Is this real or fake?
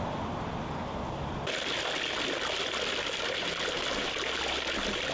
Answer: real